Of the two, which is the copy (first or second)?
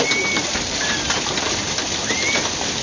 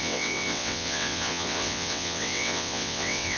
second